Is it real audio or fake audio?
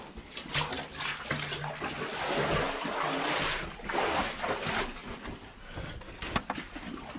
real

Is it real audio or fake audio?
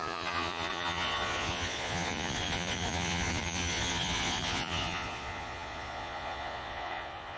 fake